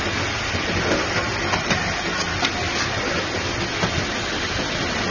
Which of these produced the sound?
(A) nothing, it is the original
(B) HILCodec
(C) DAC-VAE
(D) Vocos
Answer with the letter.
A